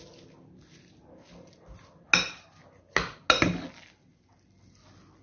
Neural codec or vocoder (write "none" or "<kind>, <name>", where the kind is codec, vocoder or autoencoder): none